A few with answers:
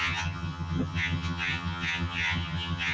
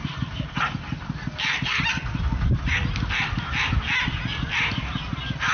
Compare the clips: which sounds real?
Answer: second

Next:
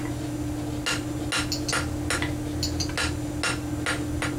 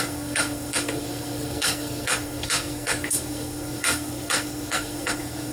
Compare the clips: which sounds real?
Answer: first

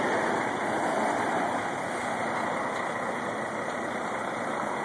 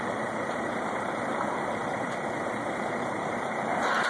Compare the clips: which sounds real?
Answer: first